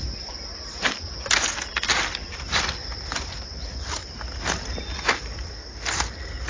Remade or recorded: recorded